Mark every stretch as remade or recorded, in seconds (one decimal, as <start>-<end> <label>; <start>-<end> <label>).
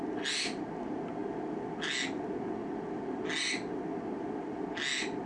0.0-5.3 recorded